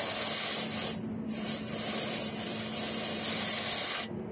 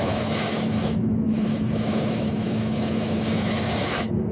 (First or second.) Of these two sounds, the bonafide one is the first